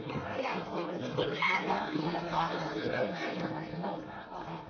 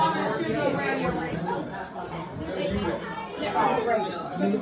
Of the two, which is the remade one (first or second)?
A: first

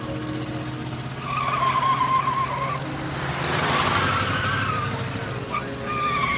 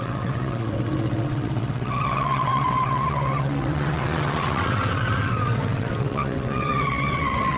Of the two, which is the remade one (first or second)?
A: second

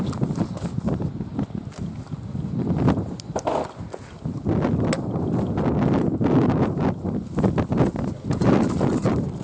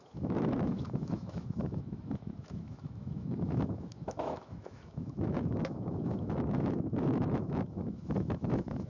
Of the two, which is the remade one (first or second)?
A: second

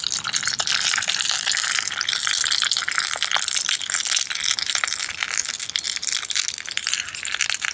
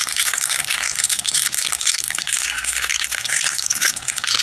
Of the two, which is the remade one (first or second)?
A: second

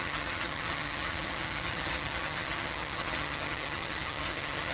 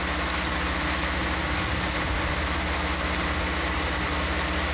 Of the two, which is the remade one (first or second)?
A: first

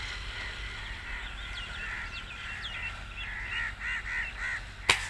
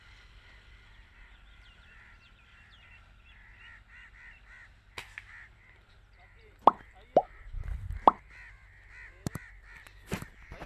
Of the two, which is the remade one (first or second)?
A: second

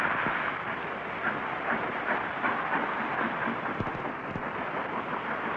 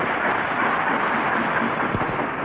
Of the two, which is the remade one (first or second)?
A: first